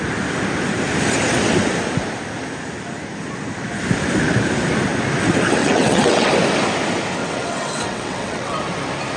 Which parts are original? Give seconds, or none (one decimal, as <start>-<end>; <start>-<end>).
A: 0.0-5.6; 6.3-7.2; 8.6-9.2